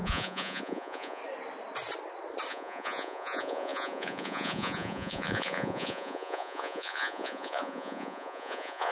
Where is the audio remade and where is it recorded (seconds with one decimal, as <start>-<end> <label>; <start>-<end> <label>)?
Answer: 0.0-1.2 remade; 1.2-2.5 recorded; 2.5-8.9 remade

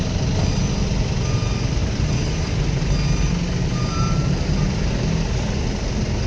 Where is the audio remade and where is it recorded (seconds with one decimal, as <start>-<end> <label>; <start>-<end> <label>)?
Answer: 0.0-6.3 recorded

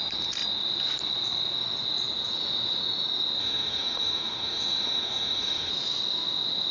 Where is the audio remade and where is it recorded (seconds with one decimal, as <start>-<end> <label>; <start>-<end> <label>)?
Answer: 0.0-3.4 recorded; 3.4-5.7 remade; 5.7-6.7 recorded